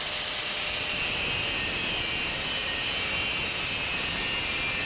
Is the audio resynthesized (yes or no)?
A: no